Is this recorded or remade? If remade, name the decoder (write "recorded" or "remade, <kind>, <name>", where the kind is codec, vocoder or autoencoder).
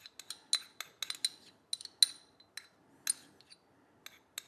recorded